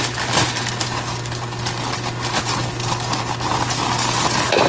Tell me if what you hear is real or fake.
real